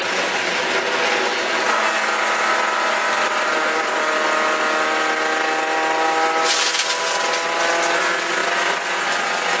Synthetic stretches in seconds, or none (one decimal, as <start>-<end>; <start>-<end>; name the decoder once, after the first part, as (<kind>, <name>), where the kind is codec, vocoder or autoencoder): none